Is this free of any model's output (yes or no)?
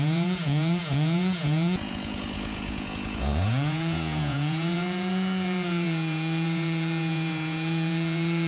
no